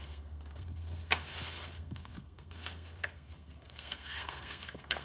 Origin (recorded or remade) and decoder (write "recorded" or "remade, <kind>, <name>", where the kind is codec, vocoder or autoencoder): remade, codec, SNAC